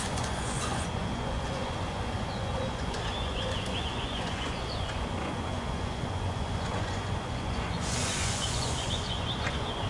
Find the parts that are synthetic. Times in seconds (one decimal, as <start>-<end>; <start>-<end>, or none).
0.0-9.9